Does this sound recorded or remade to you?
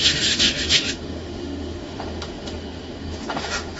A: remade